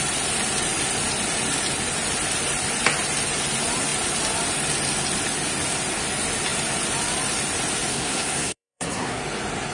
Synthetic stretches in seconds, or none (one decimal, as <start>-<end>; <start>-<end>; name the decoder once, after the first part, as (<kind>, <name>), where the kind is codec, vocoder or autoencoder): 7.9-9.2 (codec, SNAC)